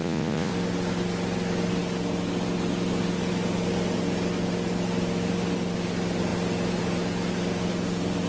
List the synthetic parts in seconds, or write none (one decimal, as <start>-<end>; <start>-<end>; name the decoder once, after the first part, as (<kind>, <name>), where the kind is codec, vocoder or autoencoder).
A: 0.0-0.5 (vocoder, Vocos)